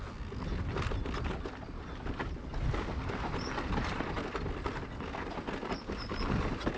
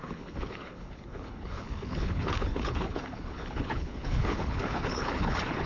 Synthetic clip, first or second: second